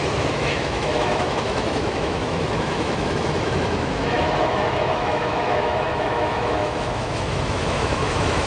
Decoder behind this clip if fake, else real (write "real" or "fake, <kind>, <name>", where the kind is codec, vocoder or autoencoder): fake, autoencoder, DAC-VAE